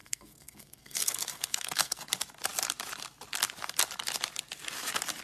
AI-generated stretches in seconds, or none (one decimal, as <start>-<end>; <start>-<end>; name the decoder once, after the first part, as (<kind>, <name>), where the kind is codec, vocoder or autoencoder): 0.0-2.1 (codec, SNAC)